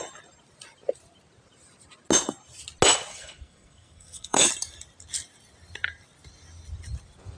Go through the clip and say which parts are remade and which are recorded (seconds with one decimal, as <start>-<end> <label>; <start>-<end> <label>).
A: 0.0-3.1 recorded; 3.1-4.5 remade; 4.5-7.4 recorded